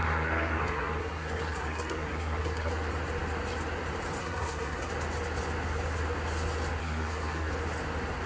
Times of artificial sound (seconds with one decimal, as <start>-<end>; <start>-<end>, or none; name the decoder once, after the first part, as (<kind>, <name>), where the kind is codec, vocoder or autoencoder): 0.0-2.7 (codec, SNAC); 4.2-4.9; 6.8-7.5